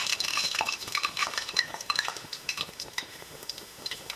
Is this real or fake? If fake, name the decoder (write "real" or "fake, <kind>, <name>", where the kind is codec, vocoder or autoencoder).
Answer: fake, autoencoder, DAC-VAE